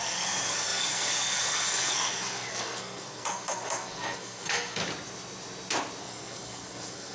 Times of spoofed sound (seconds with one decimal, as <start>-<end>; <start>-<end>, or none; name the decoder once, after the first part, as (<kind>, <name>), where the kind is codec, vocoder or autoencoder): 0.0-4.8 (codec, SNAC); 6.0-7.1